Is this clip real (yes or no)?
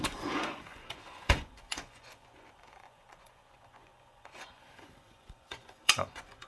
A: no